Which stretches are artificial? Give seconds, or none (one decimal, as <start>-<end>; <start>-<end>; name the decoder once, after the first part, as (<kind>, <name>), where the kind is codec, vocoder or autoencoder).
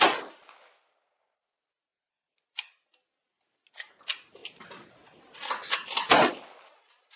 4.4-5.7 (vocoder, BigVGAN v2)